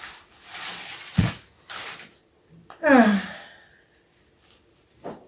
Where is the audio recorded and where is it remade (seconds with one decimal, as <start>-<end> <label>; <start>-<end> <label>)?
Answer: 0.0-0.5 recorded; 0.5-1.3 remade; 1.3-5.3 recorded

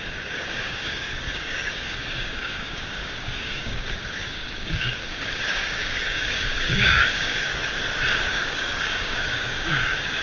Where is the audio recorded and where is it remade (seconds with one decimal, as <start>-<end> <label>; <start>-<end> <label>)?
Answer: 0.0-7.5 remade; 7.5-8.2 recorded; 8.2-10.2 remade